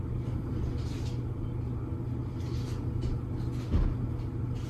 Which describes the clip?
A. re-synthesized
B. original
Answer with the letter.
B